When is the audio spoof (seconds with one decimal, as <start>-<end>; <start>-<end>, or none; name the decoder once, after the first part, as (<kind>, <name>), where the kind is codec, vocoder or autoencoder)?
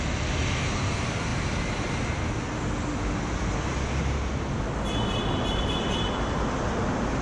none